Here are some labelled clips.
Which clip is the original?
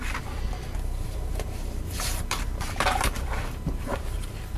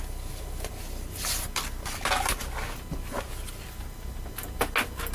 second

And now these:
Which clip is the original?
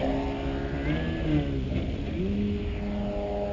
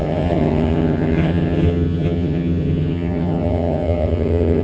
first